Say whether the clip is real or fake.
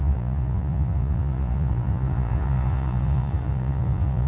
fake